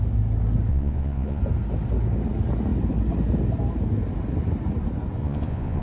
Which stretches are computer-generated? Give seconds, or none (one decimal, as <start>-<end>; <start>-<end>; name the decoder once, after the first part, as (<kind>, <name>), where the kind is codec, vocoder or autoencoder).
0.7-1.4 (vocoder, Vocos); 5.2-5.8